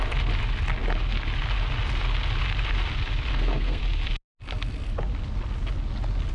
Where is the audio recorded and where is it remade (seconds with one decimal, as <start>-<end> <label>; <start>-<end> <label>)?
0.0-3.3 recorded; 3.3-3.8 remade; 3.8-6.3 recorded